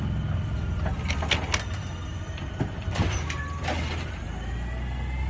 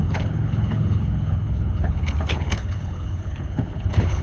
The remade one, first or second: second